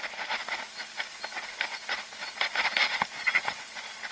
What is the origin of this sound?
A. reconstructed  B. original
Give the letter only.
B